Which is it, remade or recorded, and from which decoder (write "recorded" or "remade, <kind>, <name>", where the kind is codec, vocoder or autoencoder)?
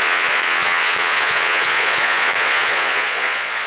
remade, vocoder, Vocos